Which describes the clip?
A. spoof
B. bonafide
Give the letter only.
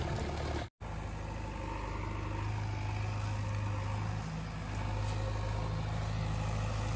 B